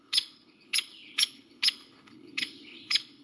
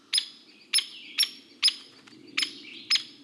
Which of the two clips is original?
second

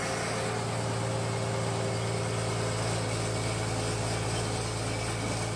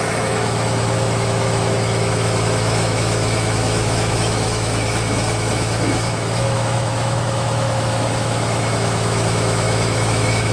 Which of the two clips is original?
first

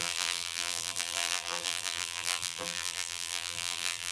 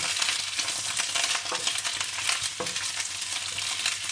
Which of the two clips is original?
second